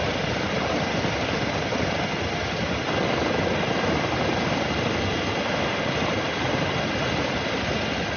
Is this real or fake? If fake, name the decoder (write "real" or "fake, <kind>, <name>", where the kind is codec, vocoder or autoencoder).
fake, vocoder, BigVGAN v2